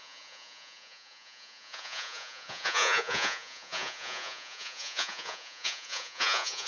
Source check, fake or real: fake